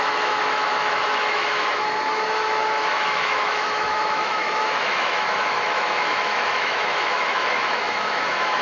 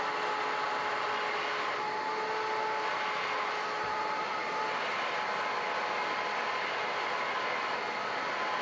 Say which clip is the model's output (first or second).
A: first